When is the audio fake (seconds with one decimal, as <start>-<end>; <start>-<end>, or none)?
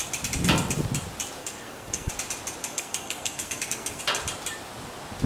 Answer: 1.4-2.1; 2.6-4.0